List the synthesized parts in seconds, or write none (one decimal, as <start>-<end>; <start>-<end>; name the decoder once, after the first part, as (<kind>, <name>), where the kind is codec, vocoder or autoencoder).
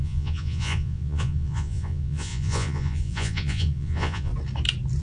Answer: 0.0-4.3 (vocoder, Vocos)